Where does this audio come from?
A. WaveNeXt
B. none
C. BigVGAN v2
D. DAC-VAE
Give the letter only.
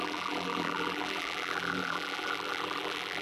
C